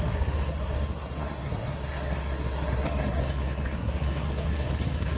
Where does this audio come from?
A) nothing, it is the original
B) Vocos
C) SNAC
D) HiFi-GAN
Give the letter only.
C